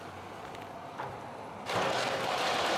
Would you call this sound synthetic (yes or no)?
yes